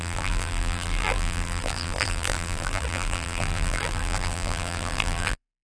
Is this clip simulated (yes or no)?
yes